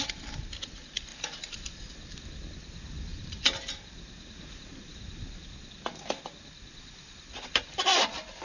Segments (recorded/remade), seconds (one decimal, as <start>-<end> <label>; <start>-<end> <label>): 0.0-1.1 recorded; 1.1-1.7 remade; 1.7-3.1 recorded; 3.1-5.1 remade; 5.1-8.4 recorded

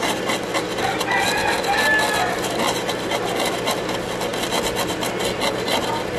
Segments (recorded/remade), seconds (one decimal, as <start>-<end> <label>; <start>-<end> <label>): 0.0-6.2 recorded

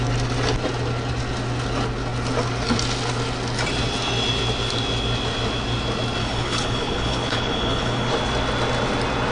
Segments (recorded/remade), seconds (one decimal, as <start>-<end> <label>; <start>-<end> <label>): 0.0-6.2 recorded; 6.2-8.1 remade; 8.1-9.3 recorded

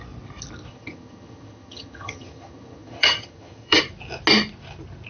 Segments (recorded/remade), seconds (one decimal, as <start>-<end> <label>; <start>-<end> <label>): 0.0-0.7 recorded; 0.7-3.8 remade; 3.8-5.1 recorded

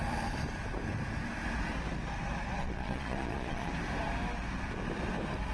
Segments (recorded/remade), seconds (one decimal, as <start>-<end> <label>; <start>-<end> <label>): 0.0-2.6 recorded; 2.6-3.7 remade; 3.7-5.5 recorded